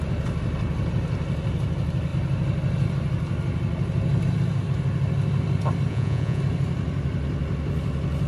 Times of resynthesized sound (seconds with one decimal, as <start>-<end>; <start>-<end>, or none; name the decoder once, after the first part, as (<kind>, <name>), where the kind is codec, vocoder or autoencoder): 5.9-6.4 (vocoder, Vocos)